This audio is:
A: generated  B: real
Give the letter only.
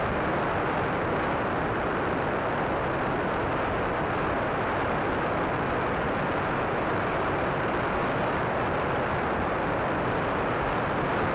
B